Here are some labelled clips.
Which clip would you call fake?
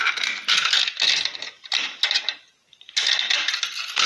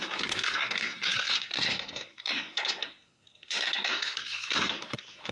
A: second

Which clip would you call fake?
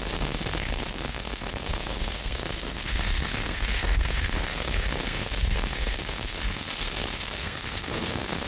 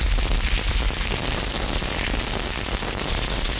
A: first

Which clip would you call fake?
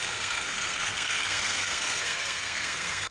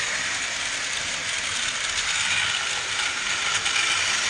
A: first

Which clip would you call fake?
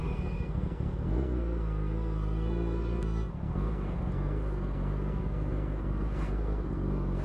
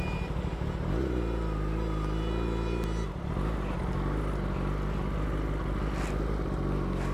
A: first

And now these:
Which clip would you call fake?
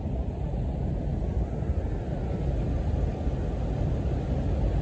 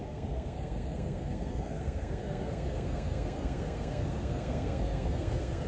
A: second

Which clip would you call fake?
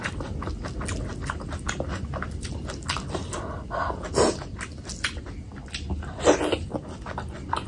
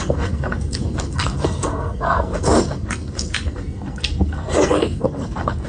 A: second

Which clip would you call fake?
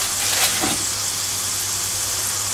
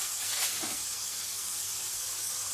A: second